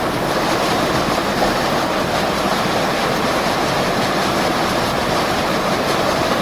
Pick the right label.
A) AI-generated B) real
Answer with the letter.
A